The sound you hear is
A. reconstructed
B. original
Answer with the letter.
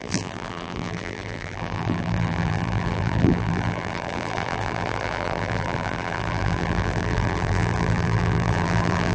A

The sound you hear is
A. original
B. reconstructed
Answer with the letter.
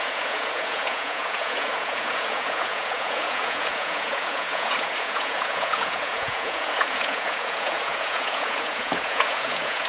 B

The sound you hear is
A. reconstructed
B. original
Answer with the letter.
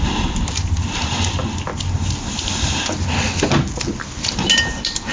B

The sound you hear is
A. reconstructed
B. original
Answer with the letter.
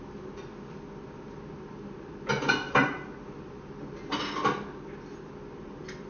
B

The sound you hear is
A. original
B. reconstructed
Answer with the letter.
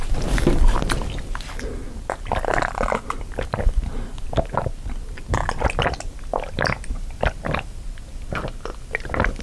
A